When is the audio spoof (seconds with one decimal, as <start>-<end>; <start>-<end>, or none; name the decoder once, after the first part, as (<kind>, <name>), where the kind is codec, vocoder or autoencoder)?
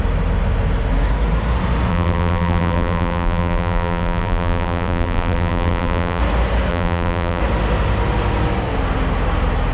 1.9-6.2 (vocoder, BigVGAN v2); 6.7-7.4